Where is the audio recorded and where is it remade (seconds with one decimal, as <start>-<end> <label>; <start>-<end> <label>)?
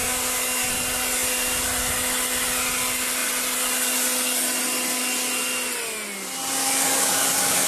0.0-0.7 remade; 0.7-6.6 recorded; 6.6-7.7 remade